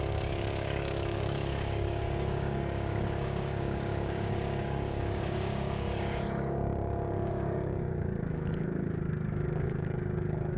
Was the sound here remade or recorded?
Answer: remade